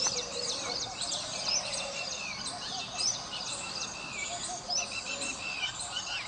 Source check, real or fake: real